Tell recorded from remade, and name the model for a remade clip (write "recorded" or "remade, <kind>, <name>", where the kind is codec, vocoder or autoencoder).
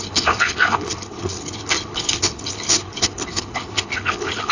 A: remade, codec, HILCodec